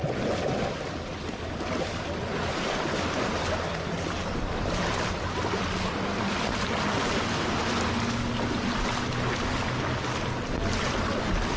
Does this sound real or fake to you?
real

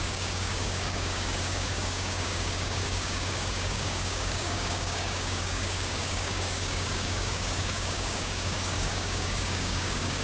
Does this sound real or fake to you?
fake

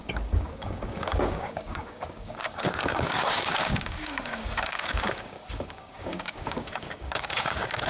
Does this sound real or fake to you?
fake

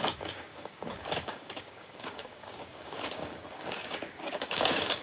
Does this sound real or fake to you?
fake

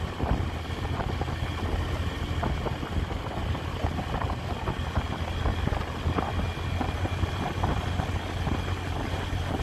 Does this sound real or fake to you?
real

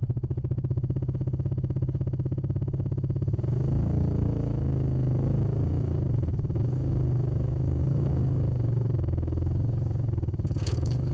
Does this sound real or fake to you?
fake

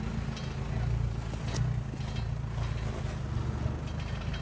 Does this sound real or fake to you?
real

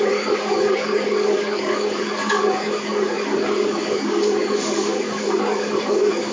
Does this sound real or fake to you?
fake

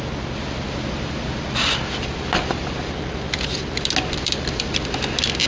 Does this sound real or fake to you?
real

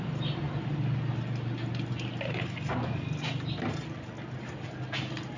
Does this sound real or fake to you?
real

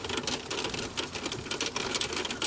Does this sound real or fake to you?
real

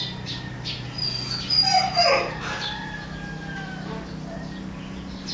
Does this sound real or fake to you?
real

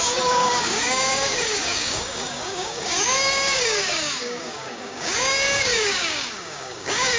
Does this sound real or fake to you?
fake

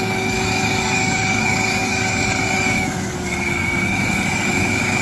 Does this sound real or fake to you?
fake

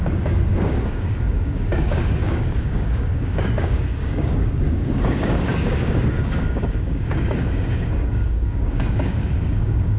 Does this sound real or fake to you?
fake